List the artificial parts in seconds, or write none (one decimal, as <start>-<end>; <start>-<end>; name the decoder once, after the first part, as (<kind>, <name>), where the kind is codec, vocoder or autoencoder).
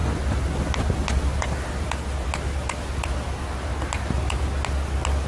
none